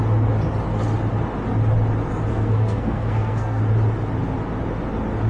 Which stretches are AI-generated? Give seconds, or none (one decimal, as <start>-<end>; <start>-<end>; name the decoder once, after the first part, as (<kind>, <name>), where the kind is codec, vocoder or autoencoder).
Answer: 2.3-3.6 (codec, SNAC)